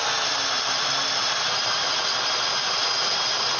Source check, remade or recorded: remade